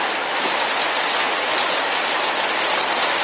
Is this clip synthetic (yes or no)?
no